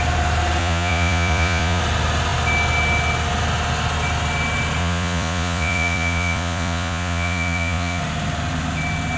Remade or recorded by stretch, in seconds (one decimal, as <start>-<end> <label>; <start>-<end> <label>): 0.0-0.6 recorded; 0.6-1.8 remade; 1.8-4.8 recorded; 4.8-8.0 remade; 8.0-9.2 recorded